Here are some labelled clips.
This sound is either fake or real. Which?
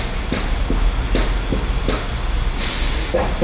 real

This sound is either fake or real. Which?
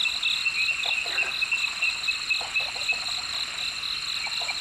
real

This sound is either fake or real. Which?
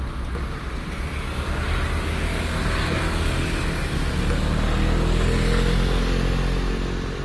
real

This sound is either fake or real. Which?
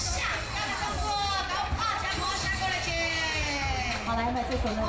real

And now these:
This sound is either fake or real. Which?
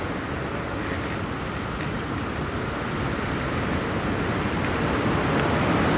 real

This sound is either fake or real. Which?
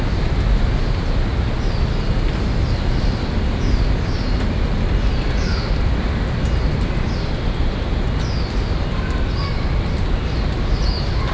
real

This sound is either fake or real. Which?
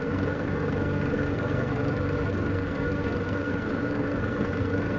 fake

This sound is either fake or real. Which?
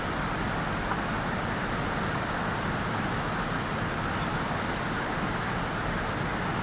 real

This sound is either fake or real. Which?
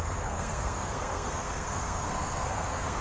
fake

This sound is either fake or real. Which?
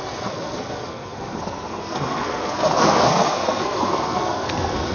fake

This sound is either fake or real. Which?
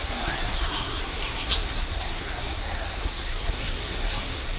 fake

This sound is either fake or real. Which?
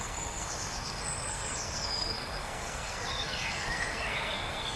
fake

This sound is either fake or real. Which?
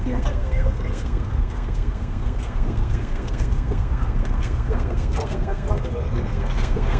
fake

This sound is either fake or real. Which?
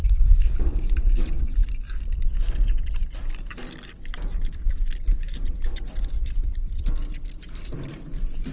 real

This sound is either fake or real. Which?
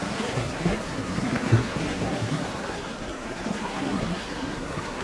fake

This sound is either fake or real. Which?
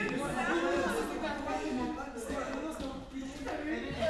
real